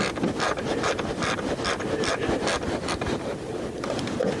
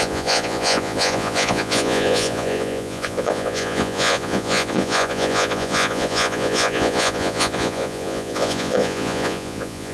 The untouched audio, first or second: first